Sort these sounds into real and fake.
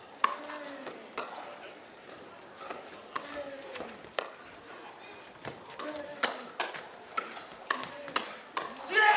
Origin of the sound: real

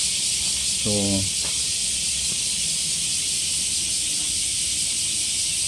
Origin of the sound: real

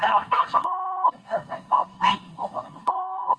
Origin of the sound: fake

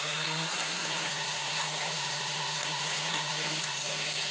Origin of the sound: fake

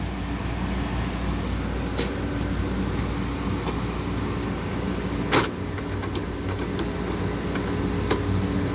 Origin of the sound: real